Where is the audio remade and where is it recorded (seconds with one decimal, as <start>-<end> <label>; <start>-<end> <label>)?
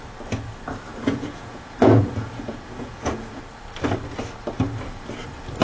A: 0.0-0.9 recorded; 0.9-3.4 remade; 3.4-5.6 recorded